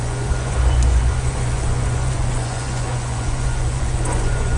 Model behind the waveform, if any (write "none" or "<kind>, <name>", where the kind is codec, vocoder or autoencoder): vocoder, Vocos